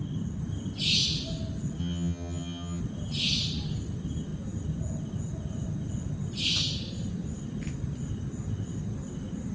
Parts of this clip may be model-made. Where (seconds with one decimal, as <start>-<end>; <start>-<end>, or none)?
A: 1.8-2.8